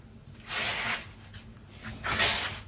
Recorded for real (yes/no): yes